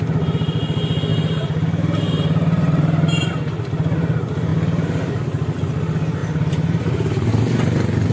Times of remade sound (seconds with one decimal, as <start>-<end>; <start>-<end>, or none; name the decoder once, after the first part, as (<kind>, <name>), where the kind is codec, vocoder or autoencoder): 1.1-3.3 (vocoder, BigVGAN v2); 4.5-5.2; 6.2-7.3